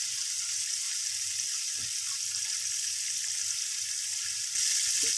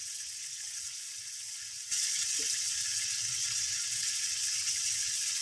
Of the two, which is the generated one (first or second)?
second